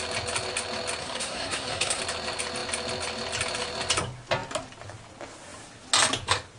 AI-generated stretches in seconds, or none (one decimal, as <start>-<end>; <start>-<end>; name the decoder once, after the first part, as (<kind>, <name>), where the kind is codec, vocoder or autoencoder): 1.0-2.0 (codec, SNAC)